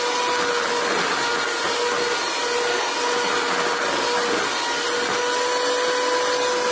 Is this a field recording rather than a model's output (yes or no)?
yes